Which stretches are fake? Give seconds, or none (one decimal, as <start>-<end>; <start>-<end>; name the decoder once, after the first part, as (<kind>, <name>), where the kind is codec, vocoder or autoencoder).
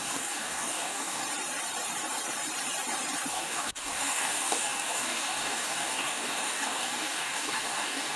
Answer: 0.0-1.2 (codec, DAC); 3.3-8.2